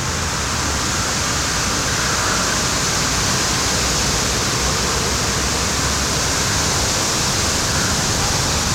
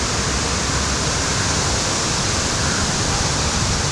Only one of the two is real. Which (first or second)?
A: first